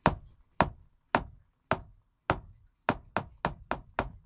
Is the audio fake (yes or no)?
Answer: no